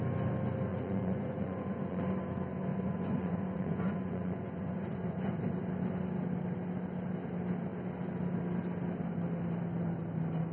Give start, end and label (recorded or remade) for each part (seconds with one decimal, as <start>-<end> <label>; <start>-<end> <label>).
0.0-0.7 recorded; 0.7-2.0 remade; 2.0-2.7 recorded; 2.7-5.4 remade; 5.4-10.5 recorded